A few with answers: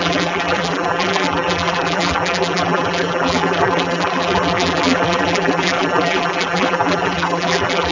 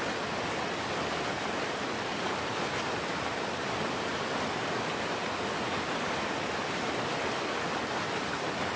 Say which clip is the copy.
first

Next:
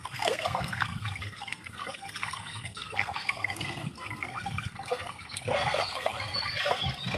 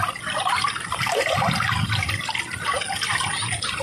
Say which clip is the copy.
first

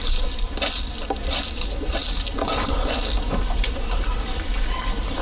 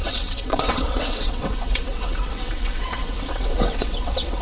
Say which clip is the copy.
second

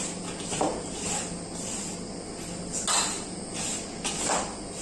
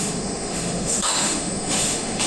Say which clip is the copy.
second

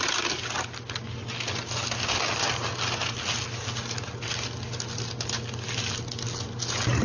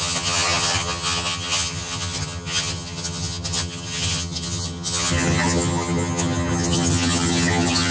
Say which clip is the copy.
second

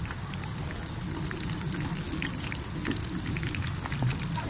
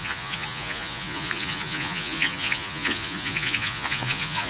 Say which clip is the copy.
second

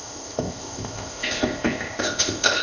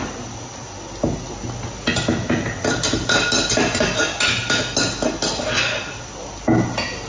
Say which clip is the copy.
first